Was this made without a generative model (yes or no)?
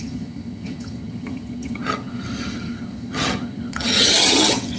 no